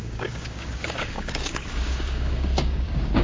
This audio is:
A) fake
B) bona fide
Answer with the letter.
A